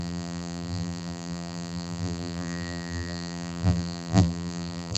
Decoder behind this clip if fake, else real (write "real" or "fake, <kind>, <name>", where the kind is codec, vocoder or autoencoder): fake, vocoder, BigVGAN v2